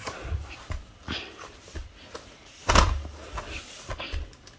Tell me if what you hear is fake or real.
real